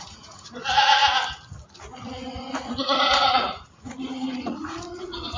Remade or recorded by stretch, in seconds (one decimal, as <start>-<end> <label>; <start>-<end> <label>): 0.0-1.0 remade; 1.0-2.7 recorded; 2.7-5.4 remade